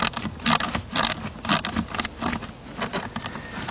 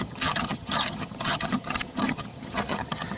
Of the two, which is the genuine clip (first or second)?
first